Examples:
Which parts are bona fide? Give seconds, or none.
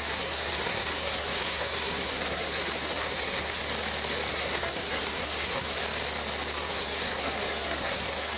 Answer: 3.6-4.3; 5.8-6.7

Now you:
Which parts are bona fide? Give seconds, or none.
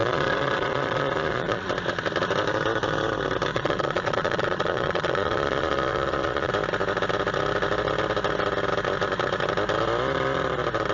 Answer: 1.7-3.5; 6.5-10.9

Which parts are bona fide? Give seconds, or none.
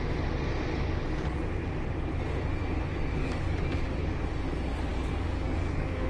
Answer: 0.0-3.2; 4.2-4.9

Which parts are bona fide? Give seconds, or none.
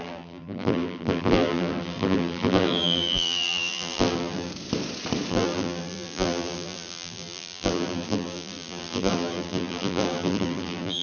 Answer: 4.5-5.3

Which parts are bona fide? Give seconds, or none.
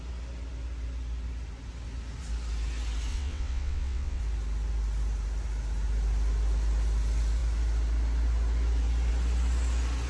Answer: 0.0-3.1; 4.2-10.1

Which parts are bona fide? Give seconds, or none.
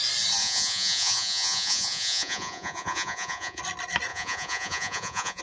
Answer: 0.0-0.4; 3.6-4.1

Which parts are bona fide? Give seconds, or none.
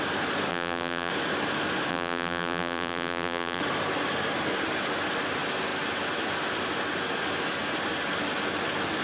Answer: 0.0-0.5; 1.1-1.9; 3.6-9.0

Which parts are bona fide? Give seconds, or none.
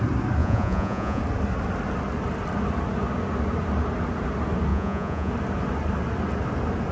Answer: 0.0-0.4; 1.2-4.7; 5.3-6.9